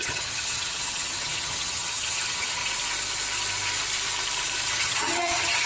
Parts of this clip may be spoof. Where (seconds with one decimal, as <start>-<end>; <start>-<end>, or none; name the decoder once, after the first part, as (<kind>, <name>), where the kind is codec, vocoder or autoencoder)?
0.0-2.6 (vocoder, HiFi-GAN); 4.7-5.7